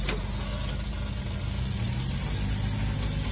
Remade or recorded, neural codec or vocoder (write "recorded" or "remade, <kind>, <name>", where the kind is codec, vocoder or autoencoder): recorded